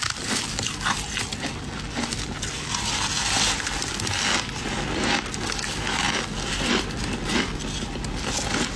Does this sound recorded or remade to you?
recorded